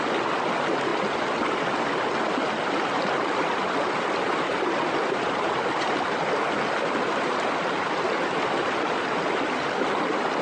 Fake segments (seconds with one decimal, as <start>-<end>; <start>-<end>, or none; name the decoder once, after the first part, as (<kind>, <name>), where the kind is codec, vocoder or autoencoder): none